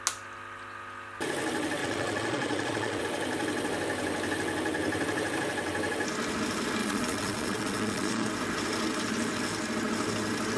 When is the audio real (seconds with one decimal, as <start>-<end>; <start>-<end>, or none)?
0.0-1.8; 3.0-6.8; 8.3-10.6